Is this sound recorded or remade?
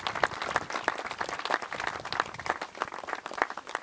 recorded